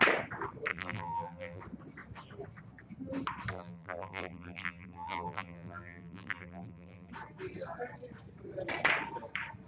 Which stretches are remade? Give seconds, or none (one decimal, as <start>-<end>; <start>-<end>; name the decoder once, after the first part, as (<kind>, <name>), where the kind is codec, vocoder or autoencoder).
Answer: 0.7-1.6 (vocoder, BigVGAN v2); 3.5-7.1